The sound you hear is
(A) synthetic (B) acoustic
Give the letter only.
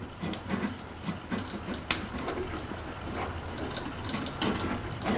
B